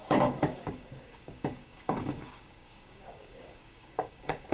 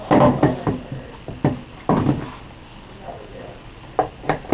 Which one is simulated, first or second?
first